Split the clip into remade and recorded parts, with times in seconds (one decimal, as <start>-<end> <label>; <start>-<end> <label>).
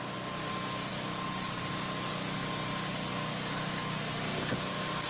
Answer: 0.0-5.1 recorded